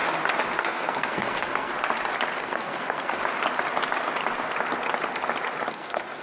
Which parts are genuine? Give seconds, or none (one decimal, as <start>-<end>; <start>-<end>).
0.0-0.6; 1.7-2.4; 3.2-5.7